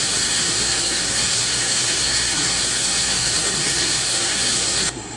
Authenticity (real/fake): fake